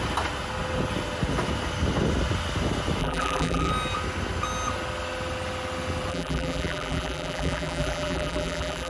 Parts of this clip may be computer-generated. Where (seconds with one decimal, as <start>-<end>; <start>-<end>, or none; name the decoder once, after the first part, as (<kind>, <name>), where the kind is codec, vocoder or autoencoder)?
3.0-3.7 (vocoder, BigVGAN v2); 6.1-8.9

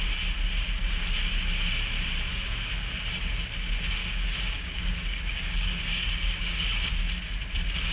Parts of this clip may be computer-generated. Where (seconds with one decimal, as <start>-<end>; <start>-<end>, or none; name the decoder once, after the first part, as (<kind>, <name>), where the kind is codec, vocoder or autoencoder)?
2.3-2.9 (codec, DAC); 4.0-6.9

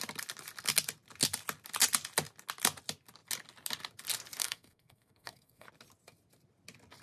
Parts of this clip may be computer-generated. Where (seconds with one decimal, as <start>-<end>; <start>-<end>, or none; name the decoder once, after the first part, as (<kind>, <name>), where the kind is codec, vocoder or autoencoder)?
4.4-5.7 (codec, SNAC)

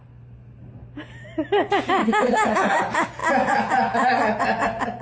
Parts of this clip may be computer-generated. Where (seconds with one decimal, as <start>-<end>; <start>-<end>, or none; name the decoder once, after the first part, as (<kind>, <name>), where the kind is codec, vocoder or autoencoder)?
2.0-2.8 (autoencoder, DAC-VAE)